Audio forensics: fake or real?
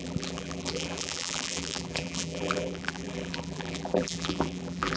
fake